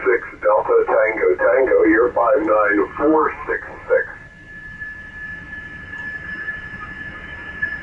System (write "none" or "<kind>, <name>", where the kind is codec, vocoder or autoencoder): none